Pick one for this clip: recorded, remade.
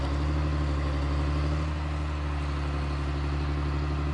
recorded